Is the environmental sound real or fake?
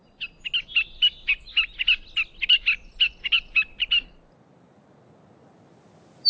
real